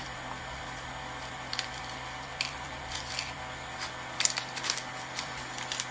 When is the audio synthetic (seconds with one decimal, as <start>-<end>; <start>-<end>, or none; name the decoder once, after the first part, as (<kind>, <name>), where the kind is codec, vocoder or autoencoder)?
none